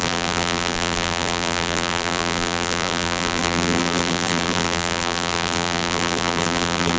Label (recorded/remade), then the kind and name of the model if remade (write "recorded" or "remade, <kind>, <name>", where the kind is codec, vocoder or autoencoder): remade, vocoder, BigVGAN v2